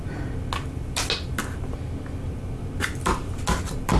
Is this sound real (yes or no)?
yes